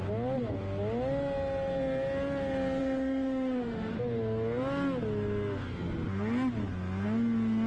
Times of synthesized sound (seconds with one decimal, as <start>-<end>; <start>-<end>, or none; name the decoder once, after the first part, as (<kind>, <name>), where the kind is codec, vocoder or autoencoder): 2.8-3.9 (autoencoder, DAC-VAE)